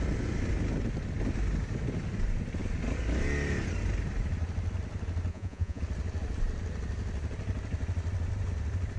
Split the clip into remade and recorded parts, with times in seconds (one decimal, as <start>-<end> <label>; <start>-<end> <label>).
0.0-5.3 recorded; 5.3-5.8 remade; 5.8-9.0 recorded

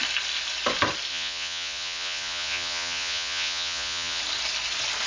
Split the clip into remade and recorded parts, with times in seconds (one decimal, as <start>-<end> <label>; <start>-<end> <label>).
0.0-1.1 recorded; 1.1-4.2 remade; 4.2-5.1 recorded

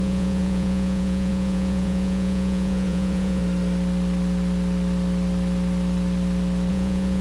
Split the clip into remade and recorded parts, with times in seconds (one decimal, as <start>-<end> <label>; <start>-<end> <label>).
0.0-3.4 remade; 3.4-6.7 recorded; 6.7-7.2 remade

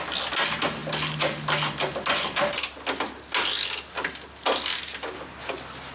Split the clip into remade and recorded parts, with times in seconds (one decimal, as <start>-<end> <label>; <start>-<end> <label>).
0.0-5.9 recorded

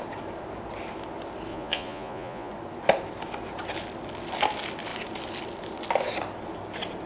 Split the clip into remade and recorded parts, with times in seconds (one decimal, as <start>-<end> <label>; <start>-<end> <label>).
0.0-1.5 recorded; 1.5-2.5 remade; 2.5-7.1 recorded